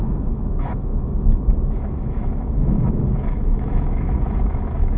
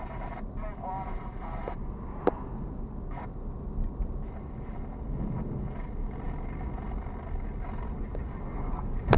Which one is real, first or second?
second